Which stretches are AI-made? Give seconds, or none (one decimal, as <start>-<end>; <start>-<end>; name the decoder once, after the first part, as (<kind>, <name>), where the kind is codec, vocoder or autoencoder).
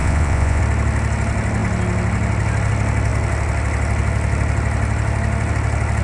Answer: 0.0-0.6 (vocoder, Vocos)